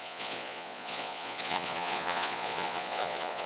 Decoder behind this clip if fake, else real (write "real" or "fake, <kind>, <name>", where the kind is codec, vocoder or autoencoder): fake, vocoder, Vocos